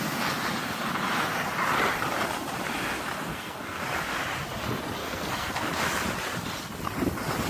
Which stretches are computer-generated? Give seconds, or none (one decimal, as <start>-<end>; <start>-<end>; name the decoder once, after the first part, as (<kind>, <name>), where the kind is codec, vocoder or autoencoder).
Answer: 3.3-3.8 (codec, SNAC); 5.0-5.7